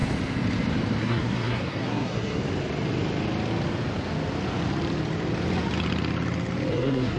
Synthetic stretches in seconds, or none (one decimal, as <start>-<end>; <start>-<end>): 1.0-2.4; 6.7-7.2